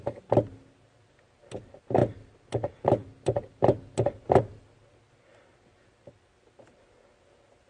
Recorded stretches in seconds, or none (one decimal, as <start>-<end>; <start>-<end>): 0.0-7.7